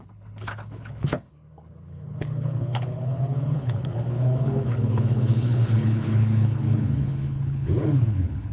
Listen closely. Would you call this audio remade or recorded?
remade